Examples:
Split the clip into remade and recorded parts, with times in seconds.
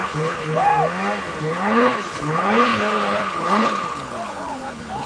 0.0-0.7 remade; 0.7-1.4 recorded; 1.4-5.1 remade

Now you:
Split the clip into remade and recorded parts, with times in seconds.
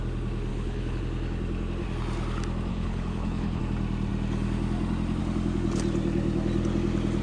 0.0-0.5 recorded; 0.5-1.0 remade; 1.0-2.7 recorded; 2.7-3.6 remade; 3.6-7.2 recorded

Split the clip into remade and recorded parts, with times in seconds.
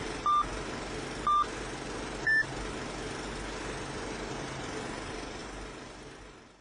0.0-6.6 recorded